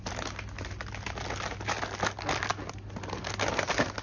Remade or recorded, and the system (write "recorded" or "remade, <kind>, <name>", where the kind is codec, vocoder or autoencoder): recorded